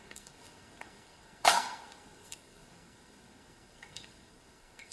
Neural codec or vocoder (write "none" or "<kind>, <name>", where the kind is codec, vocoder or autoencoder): codec, SNAC